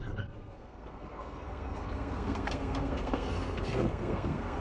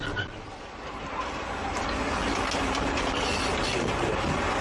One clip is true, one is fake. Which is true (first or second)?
second